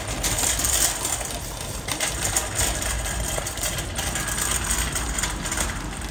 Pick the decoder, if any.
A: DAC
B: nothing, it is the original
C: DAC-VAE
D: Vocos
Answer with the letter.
B